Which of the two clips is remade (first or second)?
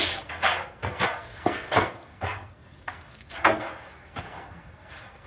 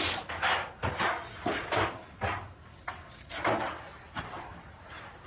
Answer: first